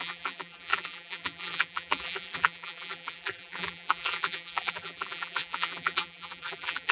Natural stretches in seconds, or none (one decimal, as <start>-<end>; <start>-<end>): none